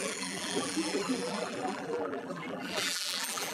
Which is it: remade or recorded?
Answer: remade